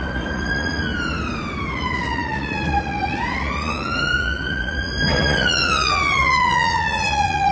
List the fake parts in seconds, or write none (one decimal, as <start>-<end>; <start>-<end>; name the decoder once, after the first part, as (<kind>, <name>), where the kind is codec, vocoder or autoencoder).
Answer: 0.0-0.9 (vocoder, Vocos); 1.7-7.5